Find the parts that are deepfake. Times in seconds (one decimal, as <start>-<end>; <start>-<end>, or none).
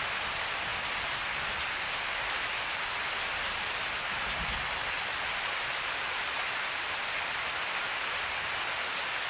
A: none